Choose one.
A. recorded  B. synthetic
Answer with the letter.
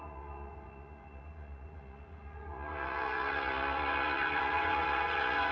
B